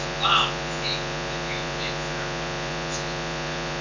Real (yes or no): no